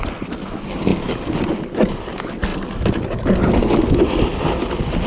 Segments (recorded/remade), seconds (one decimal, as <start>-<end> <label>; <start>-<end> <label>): 0.0-5.1 recorded